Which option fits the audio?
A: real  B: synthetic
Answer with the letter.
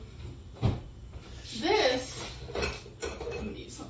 A